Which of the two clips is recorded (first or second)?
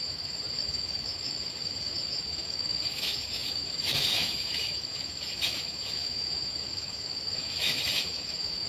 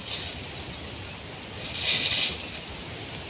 second